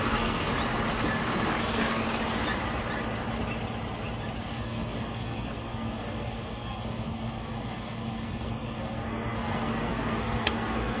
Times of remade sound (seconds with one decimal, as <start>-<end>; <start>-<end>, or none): 0.0-0.5; 1.6-2.0; 4.4-11.0